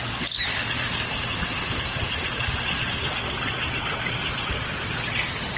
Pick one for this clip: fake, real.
real